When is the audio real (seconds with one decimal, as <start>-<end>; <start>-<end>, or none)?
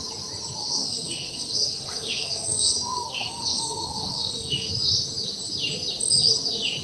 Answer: 0.0-0.6; 4.7-6.8